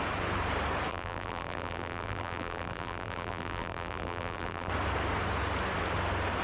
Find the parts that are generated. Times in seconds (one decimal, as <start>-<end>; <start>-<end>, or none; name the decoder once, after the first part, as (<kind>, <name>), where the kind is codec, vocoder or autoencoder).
0.9-4.7 (vocoder, BigVGAN v2)